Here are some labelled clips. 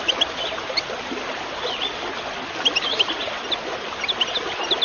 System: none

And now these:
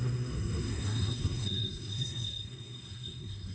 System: codec, SNAC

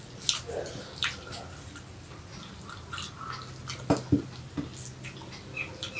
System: none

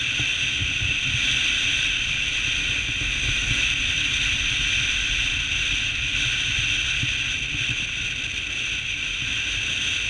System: none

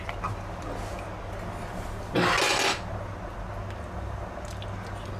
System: none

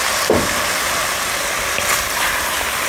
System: none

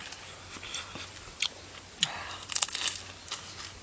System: none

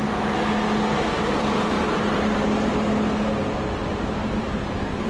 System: none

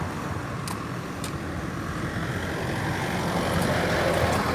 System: none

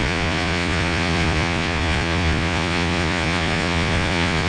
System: vocoder, Vocos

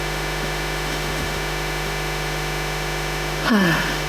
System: autoencoder, DAC-VAE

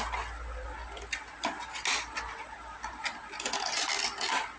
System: none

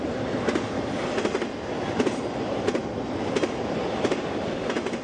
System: none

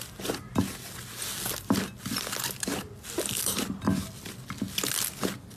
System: none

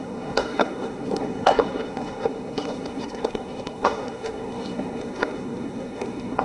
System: codec, SNAC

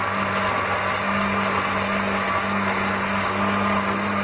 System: none